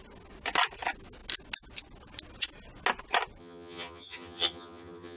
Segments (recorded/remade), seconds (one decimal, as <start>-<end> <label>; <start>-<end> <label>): 0.0-3.4 recorded; 3.4-5.2 remade